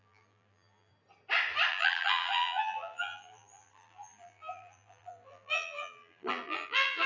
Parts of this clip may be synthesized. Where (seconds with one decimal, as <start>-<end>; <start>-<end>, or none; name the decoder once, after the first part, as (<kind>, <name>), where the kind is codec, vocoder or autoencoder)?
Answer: 0.0-0.9 (vocoder, BigVGAN v2); 1.7-7.1